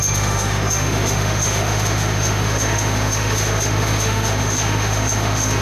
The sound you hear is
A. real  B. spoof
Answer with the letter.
B